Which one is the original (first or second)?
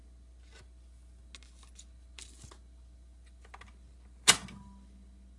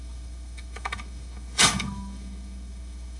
first